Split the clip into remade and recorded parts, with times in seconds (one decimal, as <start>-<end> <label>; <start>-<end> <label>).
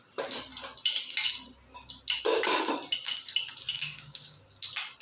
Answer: 0.0-3.7 recorded; 3.7-4.4 remade; 4.4-5.0 recorded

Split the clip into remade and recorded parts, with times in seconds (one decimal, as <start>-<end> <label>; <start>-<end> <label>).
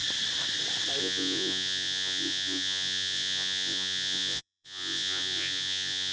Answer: 0.0-1.0 recorded; 1.0-6.1 remade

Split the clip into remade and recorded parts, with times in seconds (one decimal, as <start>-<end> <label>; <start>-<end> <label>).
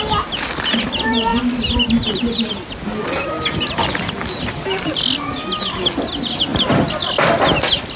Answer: 0.0-8.0 recorded